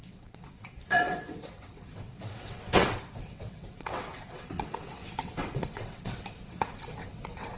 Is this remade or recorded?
remade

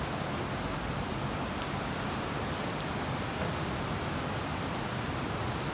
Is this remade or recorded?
recorded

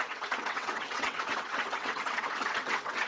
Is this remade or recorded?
remade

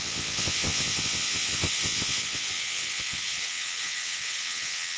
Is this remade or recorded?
remade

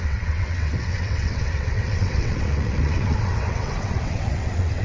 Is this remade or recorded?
remade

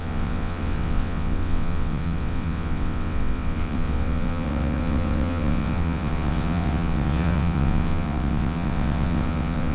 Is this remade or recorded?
remade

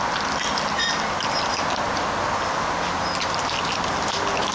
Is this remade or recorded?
recorded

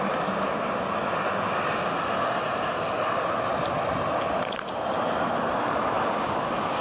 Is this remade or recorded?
recorded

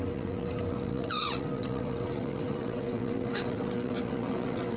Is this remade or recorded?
remade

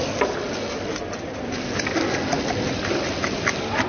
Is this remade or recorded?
recorded